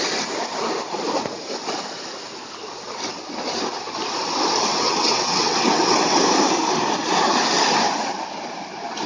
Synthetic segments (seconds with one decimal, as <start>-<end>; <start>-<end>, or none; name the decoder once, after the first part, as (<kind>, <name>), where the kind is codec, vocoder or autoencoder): 4.7-6.2 (vocoder, WaveNeXt)